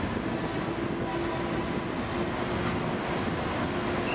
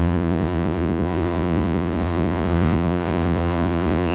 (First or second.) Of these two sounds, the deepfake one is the second